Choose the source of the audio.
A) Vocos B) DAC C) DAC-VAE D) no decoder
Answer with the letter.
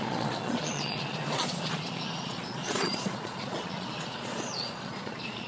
A